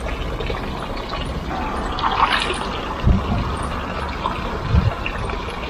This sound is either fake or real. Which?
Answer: real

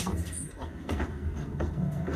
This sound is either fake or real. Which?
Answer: fake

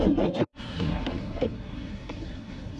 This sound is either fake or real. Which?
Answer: fake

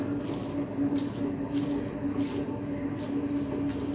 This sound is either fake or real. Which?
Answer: real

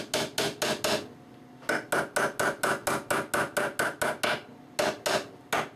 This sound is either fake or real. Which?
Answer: real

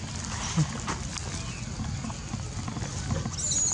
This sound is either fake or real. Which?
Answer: real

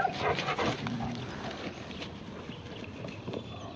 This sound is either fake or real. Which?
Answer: real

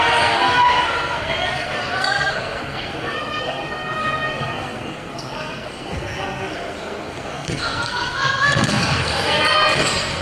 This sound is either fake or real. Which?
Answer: fake